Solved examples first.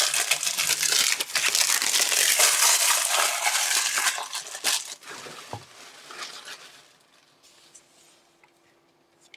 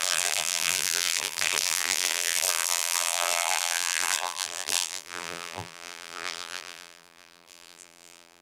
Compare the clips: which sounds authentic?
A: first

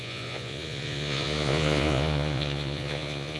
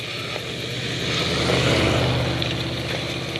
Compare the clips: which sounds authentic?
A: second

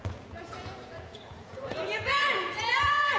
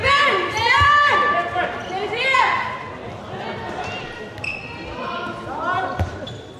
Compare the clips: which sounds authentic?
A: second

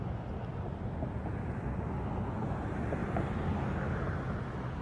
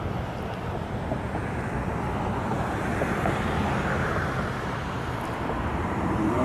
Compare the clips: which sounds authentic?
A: first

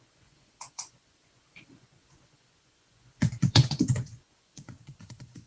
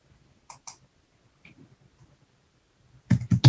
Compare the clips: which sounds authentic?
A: second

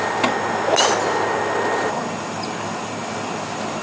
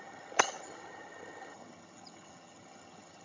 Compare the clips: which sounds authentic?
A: first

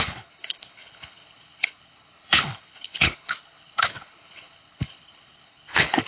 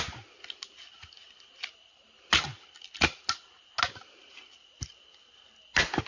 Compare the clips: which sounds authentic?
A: second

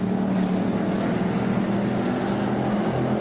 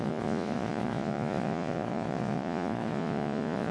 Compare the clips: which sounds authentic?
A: first